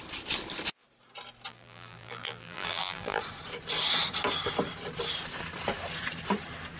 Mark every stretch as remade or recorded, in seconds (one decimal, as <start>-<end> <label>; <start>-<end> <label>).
0.0-1.5 recorded; 1.5-3.2 remade; 3.2-6.8 recorded